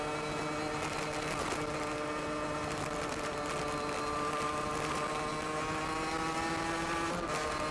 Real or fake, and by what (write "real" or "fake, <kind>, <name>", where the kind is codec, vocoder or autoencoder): real